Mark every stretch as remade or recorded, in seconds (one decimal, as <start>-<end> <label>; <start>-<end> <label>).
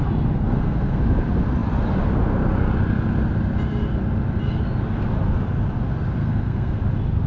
0.0-0.5 recorded; 0.5-1.0 remade; 1.0-6.2 recorded; 6.2-6.8 remade; 6.8-7.3 recorded